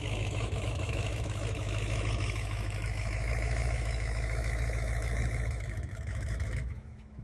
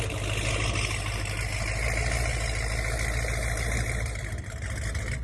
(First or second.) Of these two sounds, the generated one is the first